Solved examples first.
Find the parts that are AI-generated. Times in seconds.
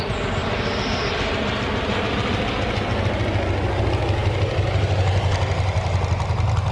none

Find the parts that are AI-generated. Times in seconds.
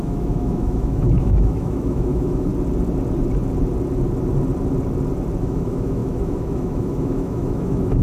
0.0-2.5 (autoencoder, DAC-VAE); 5.4-8.0